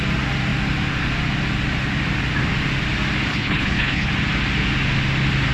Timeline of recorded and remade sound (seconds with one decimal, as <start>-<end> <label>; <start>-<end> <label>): 0.0-3.3 recorded; 3.3-4.1 remade; 4.1-5.5 recorded

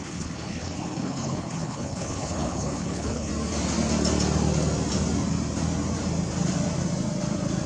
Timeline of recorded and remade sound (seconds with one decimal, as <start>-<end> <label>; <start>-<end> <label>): 0.0-3.3 remade; 3.3-7.7 recorded

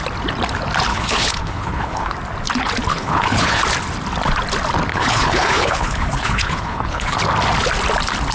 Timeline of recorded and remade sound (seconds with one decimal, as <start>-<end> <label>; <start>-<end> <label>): 0.0-0.9 recorded; 0.9-2.1 remade; 2.1-2.9 recorded; 2.9-3.6 remade; 3.6-4.9 recorded; 4.9-7.2 remade; 7.2-8.3 recorded

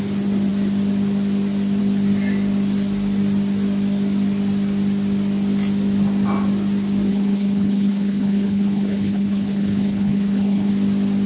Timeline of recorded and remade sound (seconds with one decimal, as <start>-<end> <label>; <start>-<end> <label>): 0.0-7.1 recorded; 7.1-10.7 remade; 10.7-11.3 recorded

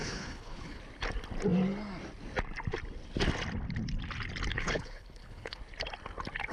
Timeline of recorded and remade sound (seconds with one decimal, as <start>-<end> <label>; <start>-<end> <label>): 0.0-0.8 remade; 0.8-4.5 recorded; 4.5-5.6 remade; 5.6-6.5 recorded

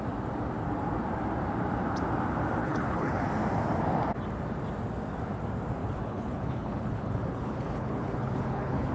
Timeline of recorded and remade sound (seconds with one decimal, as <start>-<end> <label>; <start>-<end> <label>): 0.0-2.6 recorded; 2.6-3.2 remade; 3.2-5.8 recorded; 5.8-8.9 remade

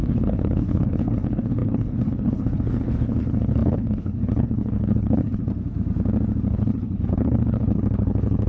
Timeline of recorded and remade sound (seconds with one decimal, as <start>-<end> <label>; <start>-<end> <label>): 0.0-5.4 remade; 5.4-6.5 recorded; 6.5-8.5 remade